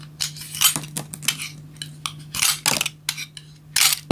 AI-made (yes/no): no